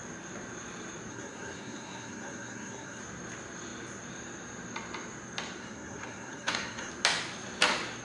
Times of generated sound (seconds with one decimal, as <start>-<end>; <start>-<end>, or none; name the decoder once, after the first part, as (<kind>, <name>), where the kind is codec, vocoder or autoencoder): 1.1-3.0 (codec, SNAC); 5.6-6.9